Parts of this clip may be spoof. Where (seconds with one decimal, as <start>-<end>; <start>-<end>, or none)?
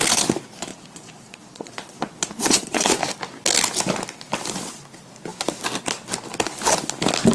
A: 0.7-3.0